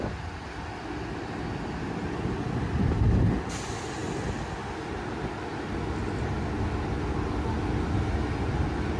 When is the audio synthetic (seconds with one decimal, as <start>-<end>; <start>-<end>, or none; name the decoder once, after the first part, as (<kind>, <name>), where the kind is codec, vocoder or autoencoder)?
none